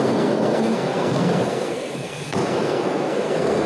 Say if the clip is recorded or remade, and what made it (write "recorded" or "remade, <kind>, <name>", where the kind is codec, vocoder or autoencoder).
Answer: remade, codec, SNAC